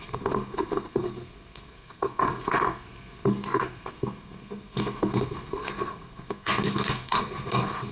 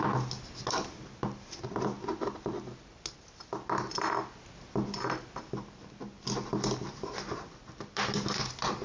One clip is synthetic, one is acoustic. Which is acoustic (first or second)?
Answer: second